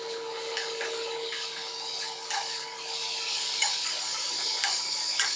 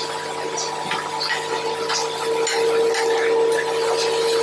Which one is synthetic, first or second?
first